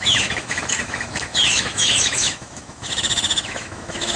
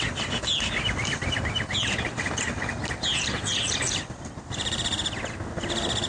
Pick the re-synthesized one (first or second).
first